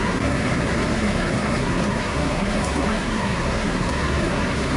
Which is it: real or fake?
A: fake